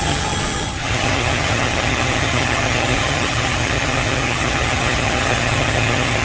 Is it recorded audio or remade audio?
remade